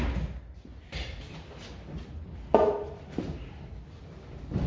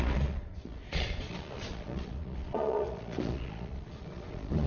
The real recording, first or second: first